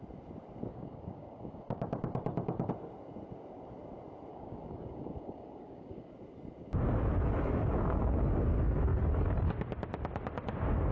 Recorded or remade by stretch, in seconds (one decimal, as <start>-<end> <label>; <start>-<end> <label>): 0.0-0.7 recorded; 0.7-2.7 remade; 2.7-4.3 recorded; 4.3-6.1 remade; 6.1-10.9 recorded